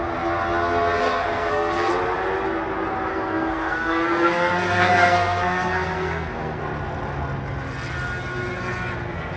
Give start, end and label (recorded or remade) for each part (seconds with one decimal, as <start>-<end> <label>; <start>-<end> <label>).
0.0-1.0 recorded; 1.0-1.9 remade; 1.9-3.1 recorded; 3.1-6.6 remade; 6.6-9.4 recorded